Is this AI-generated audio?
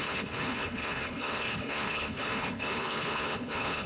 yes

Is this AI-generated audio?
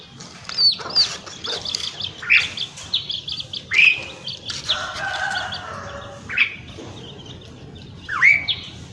no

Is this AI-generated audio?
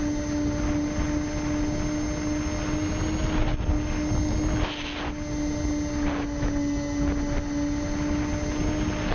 no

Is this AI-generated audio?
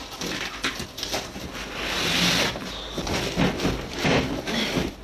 no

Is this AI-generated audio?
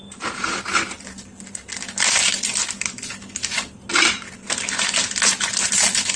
no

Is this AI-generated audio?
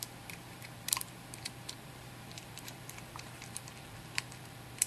yes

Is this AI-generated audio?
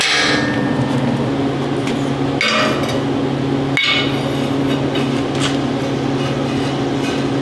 no